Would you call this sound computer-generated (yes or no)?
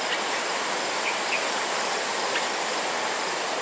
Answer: no